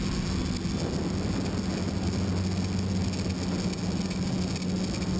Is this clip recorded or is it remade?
recorded